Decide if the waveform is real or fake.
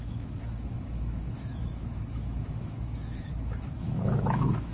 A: fake